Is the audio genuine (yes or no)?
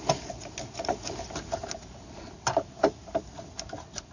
yes